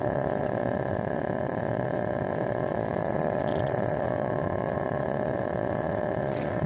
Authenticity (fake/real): fake